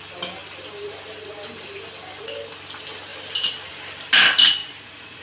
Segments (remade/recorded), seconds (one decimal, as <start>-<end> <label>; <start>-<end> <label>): 0.0-4.6 recorded; 4.6-5.2 remade